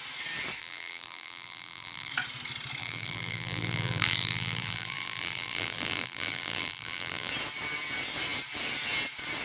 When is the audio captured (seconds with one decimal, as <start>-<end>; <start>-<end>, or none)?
0.0-0.6; 2.1-2.8; 7.3-9.4